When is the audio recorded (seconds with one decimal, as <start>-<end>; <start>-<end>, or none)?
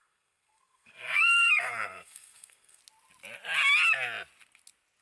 2.8-5.0